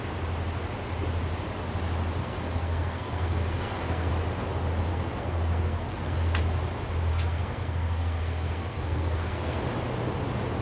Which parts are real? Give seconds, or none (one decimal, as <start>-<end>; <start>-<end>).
0.0-2.2; 4.1-4.9; 6.4-7.1; 9.6-10.6

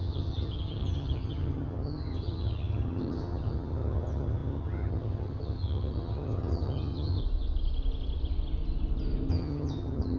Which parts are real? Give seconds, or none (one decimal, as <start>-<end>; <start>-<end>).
7.2-9.3

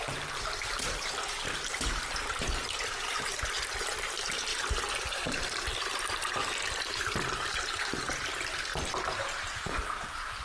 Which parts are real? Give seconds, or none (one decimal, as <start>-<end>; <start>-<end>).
4.5-5.0; 8.3-8.8

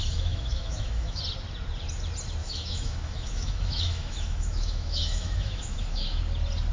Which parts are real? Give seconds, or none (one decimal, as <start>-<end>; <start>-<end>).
1.2-2.4; 6.2-6.7

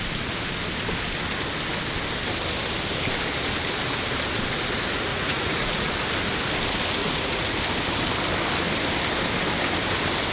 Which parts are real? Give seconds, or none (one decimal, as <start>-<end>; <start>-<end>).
0.0-5.1; 5.9-7.0; 7.6-10.3

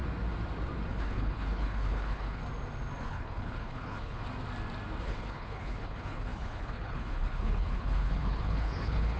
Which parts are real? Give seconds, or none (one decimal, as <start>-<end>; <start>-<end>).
0.0-0.9; 2.4-3.0; 4.2-5.0

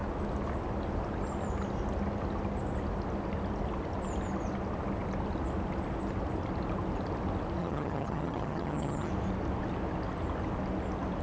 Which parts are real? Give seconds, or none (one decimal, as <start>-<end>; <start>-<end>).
0.0-7.6; 9.1-11.2